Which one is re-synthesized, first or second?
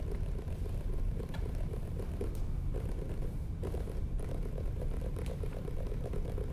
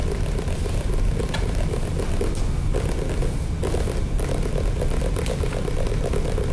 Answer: first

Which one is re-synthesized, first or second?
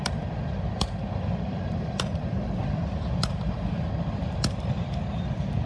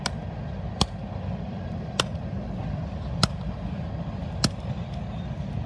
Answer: first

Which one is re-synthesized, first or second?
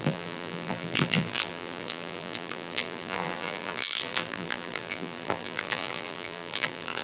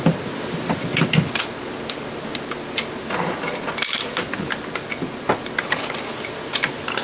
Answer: first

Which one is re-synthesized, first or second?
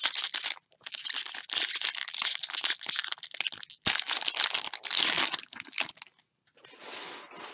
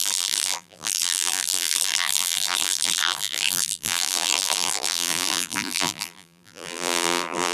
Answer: second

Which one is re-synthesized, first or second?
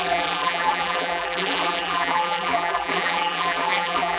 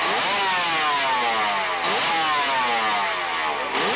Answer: first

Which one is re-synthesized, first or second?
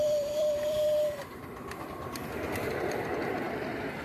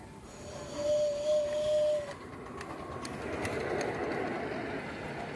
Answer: first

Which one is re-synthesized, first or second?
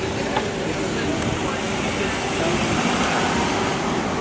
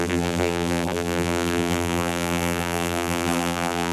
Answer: second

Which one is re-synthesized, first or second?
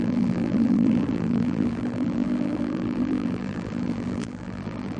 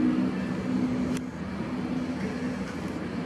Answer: first